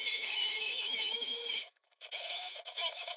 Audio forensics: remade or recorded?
remade